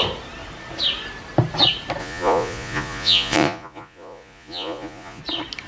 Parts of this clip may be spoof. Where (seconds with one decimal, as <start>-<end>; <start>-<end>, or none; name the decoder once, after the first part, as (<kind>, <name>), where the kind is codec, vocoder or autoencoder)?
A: 2.0-5.2 (vocoder, Vocos)

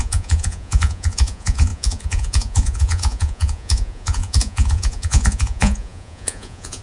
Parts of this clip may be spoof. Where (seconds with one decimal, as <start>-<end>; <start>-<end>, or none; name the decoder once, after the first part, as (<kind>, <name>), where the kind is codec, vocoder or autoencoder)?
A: 0.0-6.8 (vocoder, Vocos)

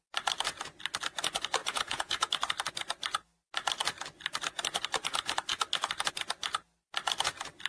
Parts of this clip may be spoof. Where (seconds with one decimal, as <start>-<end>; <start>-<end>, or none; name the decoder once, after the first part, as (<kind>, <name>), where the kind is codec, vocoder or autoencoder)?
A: 1.6-2.3 (vocoder, Vocos)

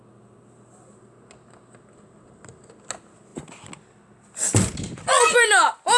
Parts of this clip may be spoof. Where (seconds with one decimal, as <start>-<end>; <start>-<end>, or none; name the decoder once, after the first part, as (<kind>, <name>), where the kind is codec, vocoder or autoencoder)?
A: none

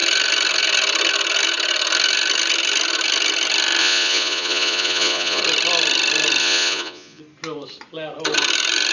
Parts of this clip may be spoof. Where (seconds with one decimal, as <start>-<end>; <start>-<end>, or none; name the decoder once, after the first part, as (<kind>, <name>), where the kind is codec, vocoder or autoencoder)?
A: 3.8-5.4 (vocoder, Vocos); 6.4-7.2

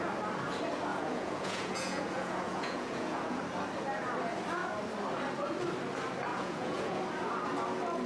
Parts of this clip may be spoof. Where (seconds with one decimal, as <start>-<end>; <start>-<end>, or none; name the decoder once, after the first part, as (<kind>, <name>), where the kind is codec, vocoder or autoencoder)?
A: 0.9-3.4 (vocoder, Vocos); 6.3-7.0